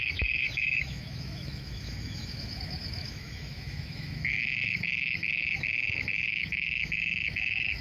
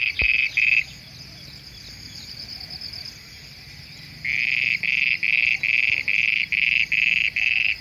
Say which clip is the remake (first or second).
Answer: first